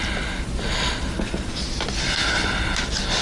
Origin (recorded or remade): recorded